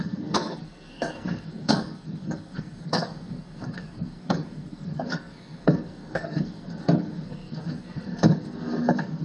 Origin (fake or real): fake